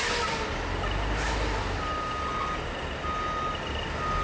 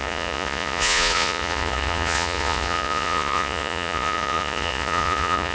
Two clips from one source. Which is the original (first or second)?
first